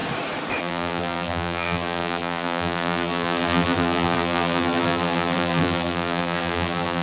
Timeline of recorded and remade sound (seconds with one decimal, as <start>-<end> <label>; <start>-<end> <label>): 0.0-0.6 recorded; 0.6-7.0 remade